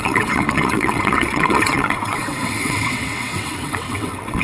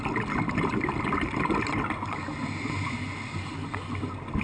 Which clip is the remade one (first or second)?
first